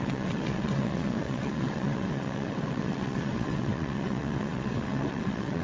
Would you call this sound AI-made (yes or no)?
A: yes